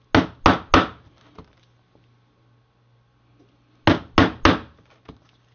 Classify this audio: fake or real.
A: real